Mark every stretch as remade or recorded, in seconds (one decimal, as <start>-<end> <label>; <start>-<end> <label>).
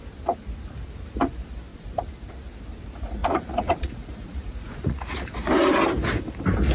0.0-1.7 recorded; 1.7-2.3 remade; 2.3-3.2 recorded; 3.2-5.5 remade; 5.5-6.7 recorded